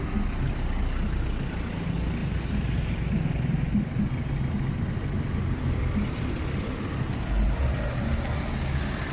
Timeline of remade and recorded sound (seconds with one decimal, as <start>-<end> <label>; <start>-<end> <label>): 0.0-9.1 recorded